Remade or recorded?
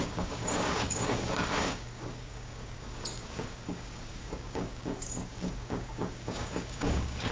remade